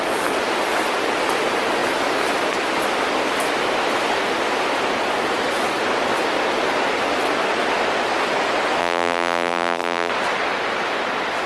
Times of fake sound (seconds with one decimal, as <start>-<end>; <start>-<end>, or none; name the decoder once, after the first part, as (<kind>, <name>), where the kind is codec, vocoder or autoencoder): 8.8-10.1 (vocoder, BigVGAN v2)